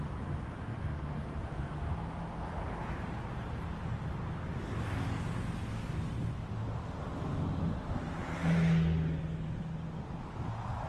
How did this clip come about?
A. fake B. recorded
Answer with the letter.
B